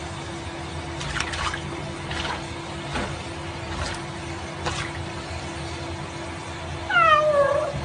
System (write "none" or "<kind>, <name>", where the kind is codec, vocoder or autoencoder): none